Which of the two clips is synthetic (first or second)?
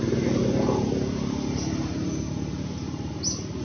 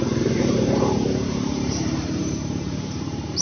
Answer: second